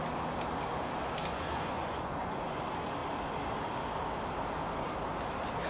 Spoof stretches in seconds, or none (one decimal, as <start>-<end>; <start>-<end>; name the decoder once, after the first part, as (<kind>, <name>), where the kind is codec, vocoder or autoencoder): 1.3-2.6 (vocoder, Vocos)